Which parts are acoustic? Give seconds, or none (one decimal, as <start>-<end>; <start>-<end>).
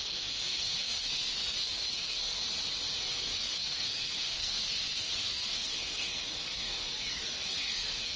2.4-3.0